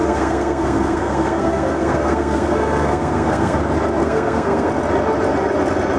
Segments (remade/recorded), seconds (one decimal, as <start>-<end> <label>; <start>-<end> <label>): 0.0-3.6 remade; 3.6-4.0 recorded; 4.0-4.7 remade; 4.7-6.0 recorded